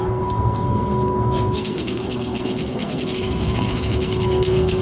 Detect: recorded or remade remade